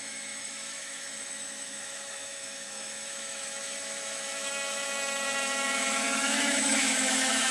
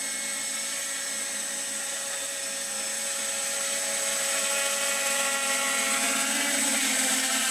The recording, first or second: second